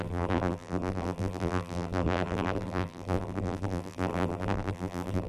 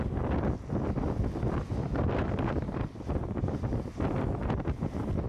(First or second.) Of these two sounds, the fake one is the first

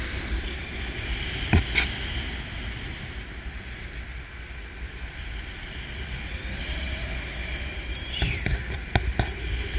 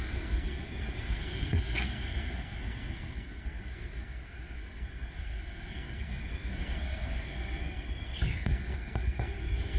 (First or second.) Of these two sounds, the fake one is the second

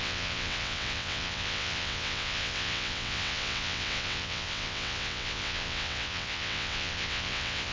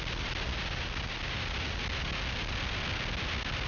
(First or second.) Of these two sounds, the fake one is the first